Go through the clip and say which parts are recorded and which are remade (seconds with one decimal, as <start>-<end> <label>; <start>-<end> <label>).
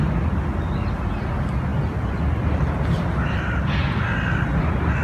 0.0-5.0 recorded